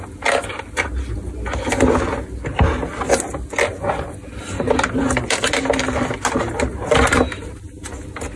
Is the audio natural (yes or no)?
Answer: yes